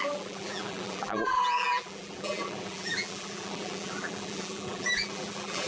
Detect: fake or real fake